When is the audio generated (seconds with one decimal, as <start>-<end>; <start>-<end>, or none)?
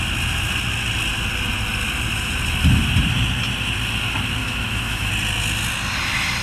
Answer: 4.4-5.1